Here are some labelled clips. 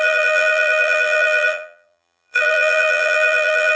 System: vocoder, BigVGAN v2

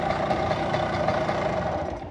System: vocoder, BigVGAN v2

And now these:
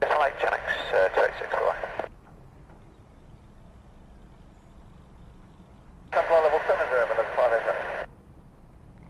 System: vocoder, BigVGAN v2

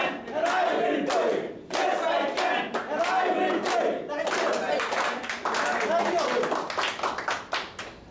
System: none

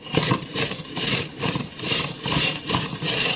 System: vocoder, BigVGAN v2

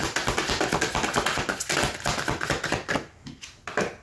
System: none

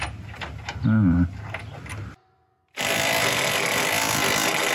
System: none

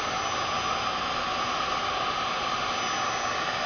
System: none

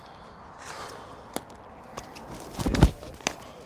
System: vocoder, BigVGAN v2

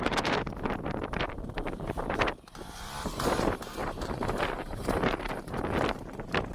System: vocoder, BigVGAN v2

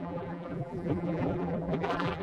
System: vocoder, BigVGAN v2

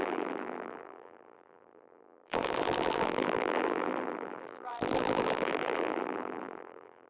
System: vocoder, BigVGAN v2